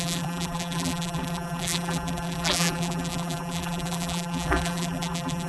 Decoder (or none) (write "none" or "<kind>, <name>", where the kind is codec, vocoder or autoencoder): vocoder, BigVGAN v2